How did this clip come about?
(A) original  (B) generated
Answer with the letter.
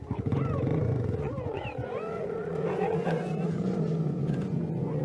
B